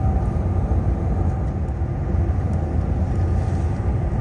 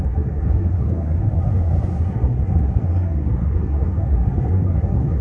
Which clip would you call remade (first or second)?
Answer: second